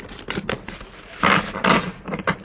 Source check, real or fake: real